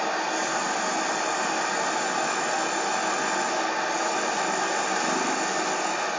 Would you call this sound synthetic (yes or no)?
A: no